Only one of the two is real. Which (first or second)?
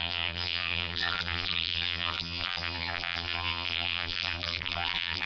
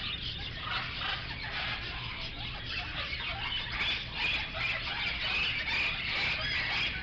second